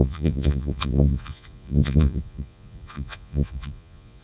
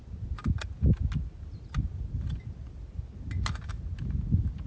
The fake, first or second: first